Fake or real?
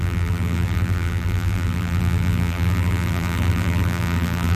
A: fake